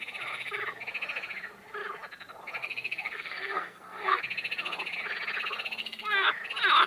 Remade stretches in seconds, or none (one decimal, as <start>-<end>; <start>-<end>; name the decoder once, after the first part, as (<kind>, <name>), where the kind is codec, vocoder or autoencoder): 2.6-4.2 (codec, SNAC); 5.8-6.3

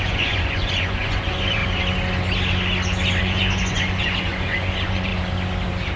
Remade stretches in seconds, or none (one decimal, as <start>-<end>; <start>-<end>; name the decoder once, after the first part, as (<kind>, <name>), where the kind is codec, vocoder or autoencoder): 0.0-1.6 (vocoder, Vocos); 3.2-5.1

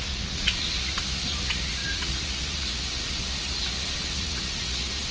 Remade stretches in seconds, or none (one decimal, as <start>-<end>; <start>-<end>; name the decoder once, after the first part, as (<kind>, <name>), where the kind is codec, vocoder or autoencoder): 0.0-5.1 (vocoder, Vocos)

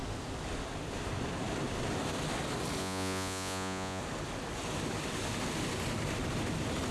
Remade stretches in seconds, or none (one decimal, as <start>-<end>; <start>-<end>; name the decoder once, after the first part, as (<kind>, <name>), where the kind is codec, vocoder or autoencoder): 2.8-4.0 (vocoder, Vocos)

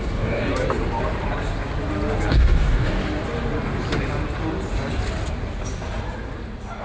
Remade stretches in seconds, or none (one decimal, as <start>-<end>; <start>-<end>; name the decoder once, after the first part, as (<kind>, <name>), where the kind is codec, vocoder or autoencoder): 0.0-0.5 (codec, DAC); 2.3-3.0

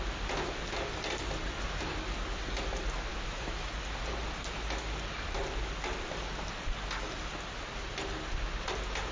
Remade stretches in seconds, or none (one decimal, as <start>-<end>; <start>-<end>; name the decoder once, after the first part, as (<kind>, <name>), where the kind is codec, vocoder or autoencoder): 3.1-3.7 (autoencoder, DAC-VAE)

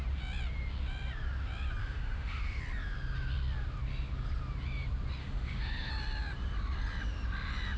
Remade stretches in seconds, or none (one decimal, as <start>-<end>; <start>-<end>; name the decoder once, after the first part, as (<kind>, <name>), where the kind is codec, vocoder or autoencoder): 1.8-2.6 (autoencoder, DAC-VAE); 5.2-5.9

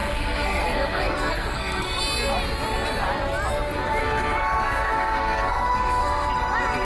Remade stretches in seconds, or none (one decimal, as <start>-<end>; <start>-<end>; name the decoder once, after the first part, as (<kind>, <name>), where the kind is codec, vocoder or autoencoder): 0.0-2.0 (codec, SNAC); 4.0-6.3